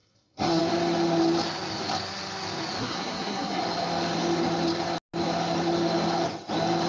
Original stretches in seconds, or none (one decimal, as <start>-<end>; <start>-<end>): 0.6-2.8; 3.6-6.9